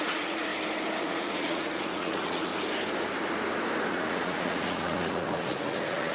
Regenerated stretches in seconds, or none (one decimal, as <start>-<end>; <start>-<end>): 0.0-0.5; 1.0-2.5; 3.9-6.1